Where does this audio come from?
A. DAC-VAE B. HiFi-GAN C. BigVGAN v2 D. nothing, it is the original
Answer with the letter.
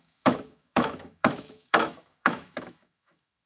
A